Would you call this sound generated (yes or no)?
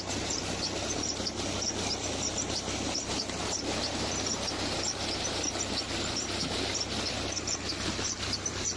yes